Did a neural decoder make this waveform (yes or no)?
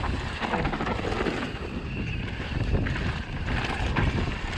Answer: no